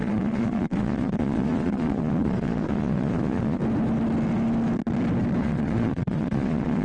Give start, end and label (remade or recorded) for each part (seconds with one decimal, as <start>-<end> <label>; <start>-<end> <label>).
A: 0.0-3.6 remade; 3.6-5.4 recorded; 5.4-6.8 remade